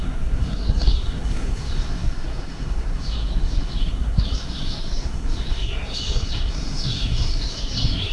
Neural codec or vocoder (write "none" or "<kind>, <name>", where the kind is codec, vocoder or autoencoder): codec, SNAC